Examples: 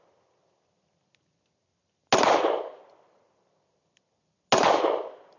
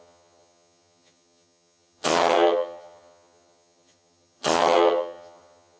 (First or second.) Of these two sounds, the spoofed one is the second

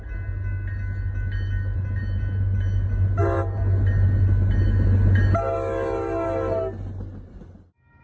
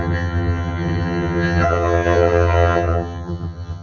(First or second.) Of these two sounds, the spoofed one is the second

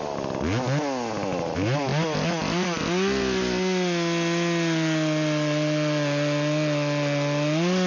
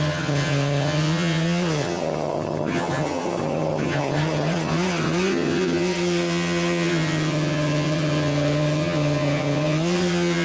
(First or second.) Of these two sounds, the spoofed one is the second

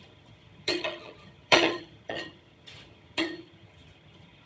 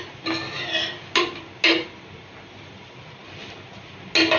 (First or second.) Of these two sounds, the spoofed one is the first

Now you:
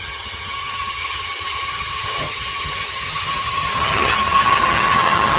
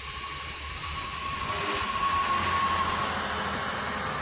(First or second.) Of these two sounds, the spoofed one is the first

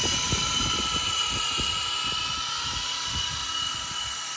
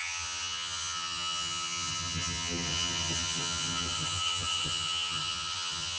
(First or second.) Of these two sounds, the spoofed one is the second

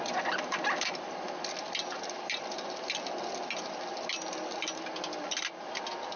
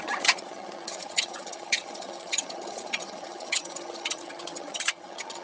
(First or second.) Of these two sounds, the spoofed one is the second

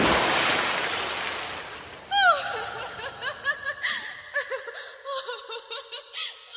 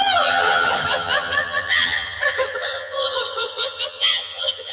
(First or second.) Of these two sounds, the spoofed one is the second